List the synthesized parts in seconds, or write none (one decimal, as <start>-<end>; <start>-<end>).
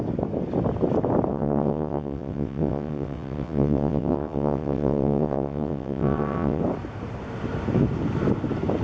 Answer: 1.3-6.6